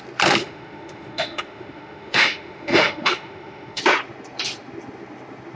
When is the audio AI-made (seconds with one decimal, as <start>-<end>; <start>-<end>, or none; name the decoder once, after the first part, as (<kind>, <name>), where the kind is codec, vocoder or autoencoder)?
0.4-3.8 (autoencoder, DAC-VAE)

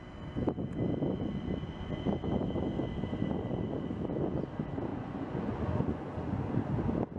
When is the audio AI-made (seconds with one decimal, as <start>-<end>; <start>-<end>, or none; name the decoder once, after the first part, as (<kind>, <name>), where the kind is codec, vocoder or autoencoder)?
4.9-6.4 (vocoder, Vocos)

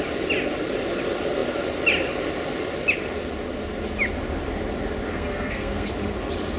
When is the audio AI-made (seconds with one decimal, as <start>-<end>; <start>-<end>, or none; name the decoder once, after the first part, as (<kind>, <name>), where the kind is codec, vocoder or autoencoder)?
5.1-5.9 (codec, SNAC)

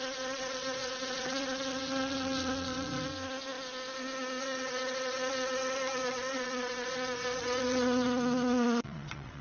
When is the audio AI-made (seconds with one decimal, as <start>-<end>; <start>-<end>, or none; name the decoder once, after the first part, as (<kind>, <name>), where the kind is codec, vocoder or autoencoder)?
0.0-3.1 (vocoder, WaveNeXt); 4.4-9.4

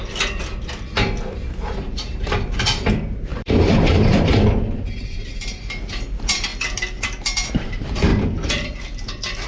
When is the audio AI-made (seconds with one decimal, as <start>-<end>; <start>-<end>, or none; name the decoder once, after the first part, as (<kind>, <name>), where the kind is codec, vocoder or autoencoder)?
0.9-6.5 (vocoder, BigVGAN v2); 7.5-8.1

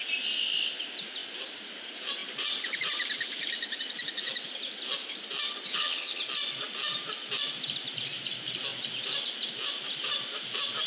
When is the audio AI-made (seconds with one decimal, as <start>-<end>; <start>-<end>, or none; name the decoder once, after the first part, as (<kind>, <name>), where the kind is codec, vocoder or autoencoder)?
5.7-6.2 (vocoder, HiFi-GAN)